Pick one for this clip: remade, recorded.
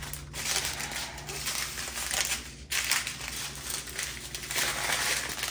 recorded